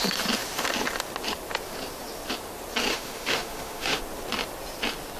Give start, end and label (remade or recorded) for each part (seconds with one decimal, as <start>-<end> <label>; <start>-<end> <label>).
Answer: 0.0-2.9 recorded; 2.9-4.0 remade; 4.0-5.2 recorded